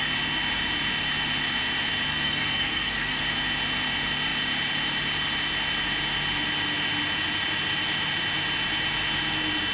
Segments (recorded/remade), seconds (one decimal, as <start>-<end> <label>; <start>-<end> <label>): 0.0-2.1 recorded; 2.1-3.2 remade; 3.2-9.7 recorded